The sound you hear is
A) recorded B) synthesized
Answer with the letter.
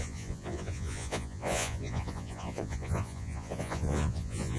B